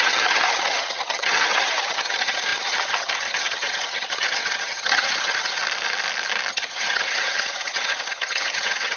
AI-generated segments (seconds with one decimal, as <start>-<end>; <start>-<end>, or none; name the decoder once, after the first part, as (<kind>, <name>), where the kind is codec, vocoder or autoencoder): 0.0-5.6 (vocoder, HiFi-GAN); 6.5-9.0